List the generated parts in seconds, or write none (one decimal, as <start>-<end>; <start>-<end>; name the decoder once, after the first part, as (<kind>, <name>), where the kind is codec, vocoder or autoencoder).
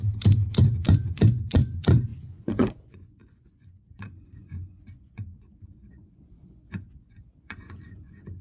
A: 0.7-8.4 (vocoder, Vocos)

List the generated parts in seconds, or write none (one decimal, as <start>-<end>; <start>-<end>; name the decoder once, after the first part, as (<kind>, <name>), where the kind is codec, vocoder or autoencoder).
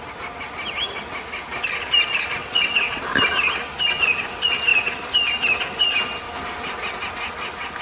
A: 2.4-3.0 (vocoder, WaveNeXt)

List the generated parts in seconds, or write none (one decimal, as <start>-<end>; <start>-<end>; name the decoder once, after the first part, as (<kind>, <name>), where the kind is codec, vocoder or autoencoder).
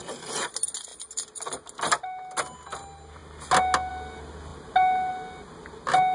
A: none